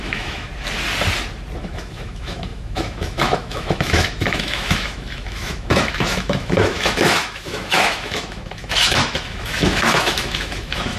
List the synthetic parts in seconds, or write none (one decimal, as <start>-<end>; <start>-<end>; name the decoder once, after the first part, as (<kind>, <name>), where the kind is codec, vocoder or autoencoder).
0.0-0.5 (autoencoder, DAC-VAE); 1.6-11.0